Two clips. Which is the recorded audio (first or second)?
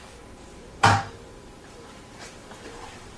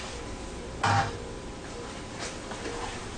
second